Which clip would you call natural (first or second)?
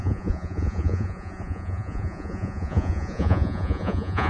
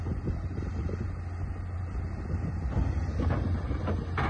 second